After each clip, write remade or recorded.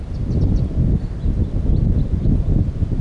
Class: recorded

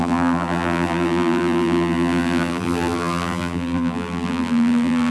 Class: remade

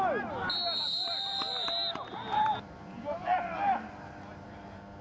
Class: recorded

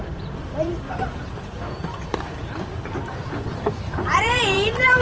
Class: remade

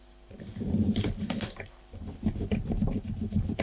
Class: recorded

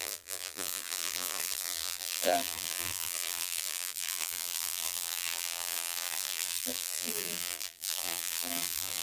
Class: remade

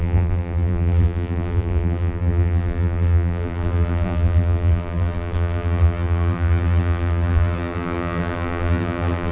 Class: remade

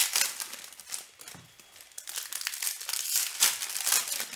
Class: recorded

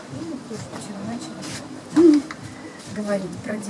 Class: remade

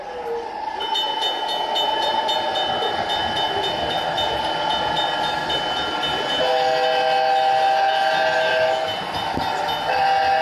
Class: recorded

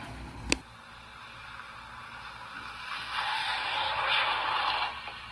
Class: recorded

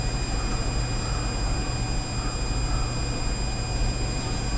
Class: recorded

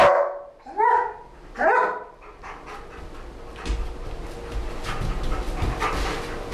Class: recorded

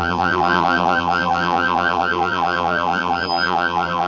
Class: remade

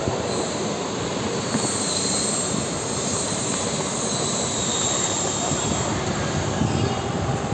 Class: remade